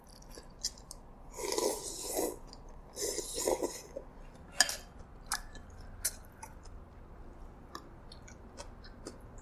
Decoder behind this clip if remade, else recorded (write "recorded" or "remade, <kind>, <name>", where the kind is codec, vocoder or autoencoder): recorded